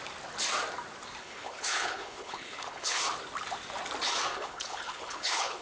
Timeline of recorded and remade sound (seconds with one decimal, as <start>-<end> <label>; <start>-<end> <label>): 0.0-1.2 recorded; 1.2-3.0 remade; 3.0-4.3 recorded; 4.3-5.6 remade